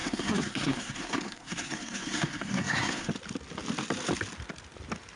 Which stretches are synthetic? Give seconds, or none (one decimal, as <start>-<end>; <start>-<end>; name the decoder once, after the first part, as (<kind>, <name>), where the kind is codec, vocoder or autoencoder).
0.0-3.1 (codec, SNAC)